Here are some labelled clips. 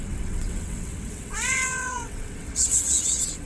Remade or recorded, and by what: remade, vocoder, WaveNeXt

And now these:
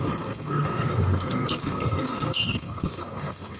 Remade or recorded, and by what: remade, codec, SNAC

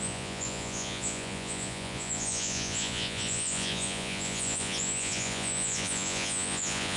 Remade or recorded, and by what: remade, vocoder, Vocos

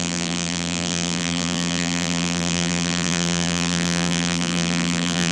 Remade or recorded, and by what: remade, vocoder, BigVGAN v2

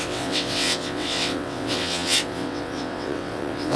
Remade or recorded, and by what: remade, vocoder, WaveNeXt